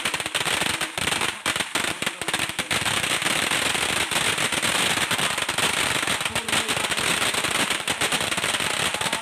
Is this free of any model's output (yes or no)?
yes